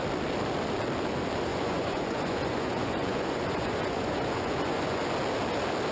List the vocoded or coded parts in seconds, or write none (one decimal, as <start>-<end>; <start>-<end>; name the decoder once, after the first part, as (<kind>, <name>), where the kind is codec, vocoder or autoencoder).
1.5-5.0 (vocoder, Vocos)